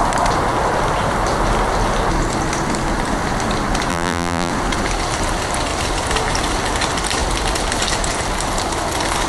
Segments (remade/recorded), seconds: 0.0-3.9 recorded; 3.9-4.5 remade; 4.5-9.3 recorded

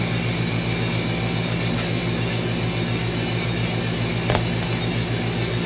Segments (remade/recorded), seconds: 0.0-5.7 recorded